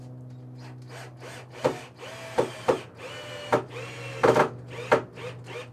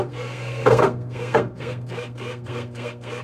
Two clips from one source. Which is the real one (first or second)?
first